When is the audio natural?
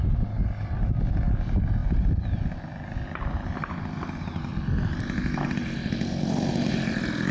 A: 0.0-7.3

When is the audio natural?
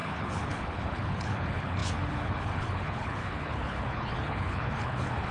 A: none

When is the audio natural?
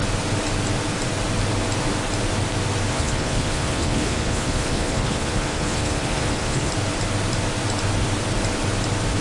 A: 0.0-2.9; 6.7-9.2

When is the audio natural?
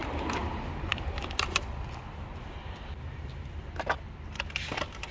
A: 0.0-5.1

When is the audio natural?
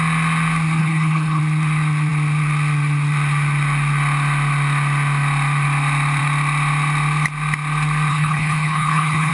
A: 0.0-0.8; 1.4-8.1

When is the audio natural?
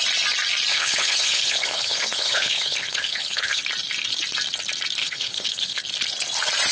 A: 0.0-0.7; 3.6-5.0; 5.8-6.7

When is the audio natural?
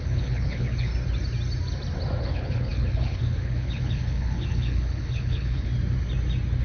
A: 0.9-2.2; 5.7-6.6